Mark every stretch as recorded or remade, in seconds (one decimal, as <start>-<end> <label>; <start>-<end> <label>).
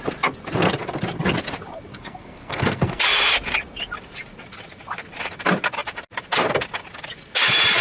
0.0-1.9 recorded; 1.9-3.0 remade; 3.0-7.8 recorded